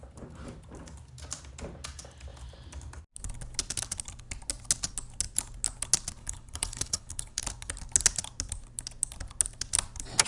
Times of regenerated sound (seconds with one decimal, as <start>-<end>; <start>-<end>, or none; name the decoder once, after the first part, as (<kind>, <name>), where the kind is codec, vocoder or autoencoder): 6.2-7.4 (codec, HILCodec)